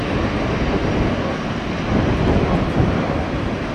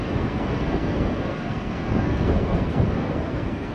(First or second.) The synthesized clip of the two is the second